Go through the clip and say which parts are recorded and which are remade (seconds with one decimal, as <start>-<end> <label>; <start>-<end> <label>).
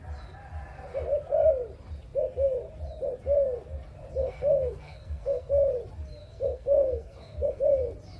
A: 0.0-4.2 recorded; 4.2-5.5 remade; 5.5-6.2 recorded; 6.2-7.6 remade; 7.6-8.2 recorded